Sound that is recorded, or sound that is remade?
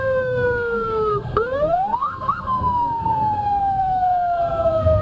remade